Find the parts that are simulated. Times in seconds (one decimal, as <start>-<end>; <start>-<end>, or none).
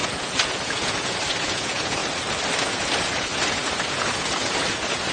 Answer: 0.0-2.0; 2.6-5.1